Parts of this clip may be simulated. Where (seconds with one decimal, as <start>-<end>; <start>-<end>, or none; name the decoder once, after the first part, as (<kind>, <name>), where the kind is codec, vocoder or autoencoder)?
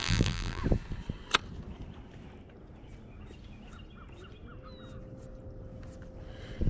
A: 0.0-0.6 (vocoder, BigVGAN v2)